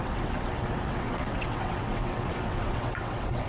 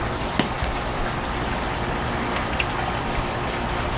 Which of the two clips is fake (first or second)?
first